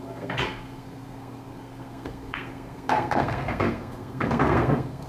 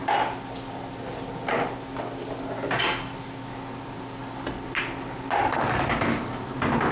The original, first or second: second